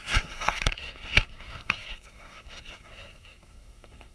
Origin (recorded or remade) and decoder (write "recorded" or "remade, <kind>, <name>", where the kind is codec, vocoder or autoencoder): remade, codec, SNAC